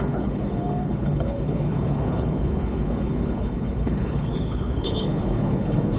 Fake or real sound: fake